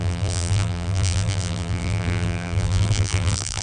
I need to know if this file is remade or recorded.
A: remade